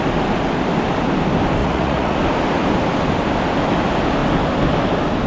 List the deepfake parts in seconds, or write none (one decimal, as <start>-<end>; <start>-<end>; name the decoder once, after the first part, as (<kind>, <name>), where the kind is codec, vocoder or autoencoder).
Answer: 1.6-2.2 (vocoder, Vocos)